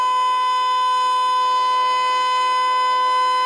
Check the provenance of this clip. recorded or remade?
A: recorded